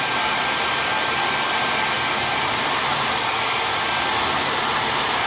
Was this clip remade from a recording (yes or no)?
no